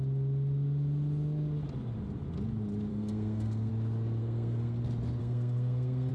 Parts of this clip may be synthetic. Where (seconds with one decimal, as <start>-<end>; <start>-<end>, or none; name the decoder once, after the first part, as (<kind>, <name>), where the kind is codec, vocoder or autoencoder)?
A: 2.9-3.7 (codec, SNAC); 4.2-4.8; 5.2-6.1